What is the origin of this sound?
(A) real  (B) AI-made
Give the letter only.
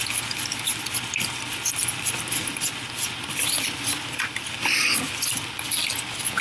A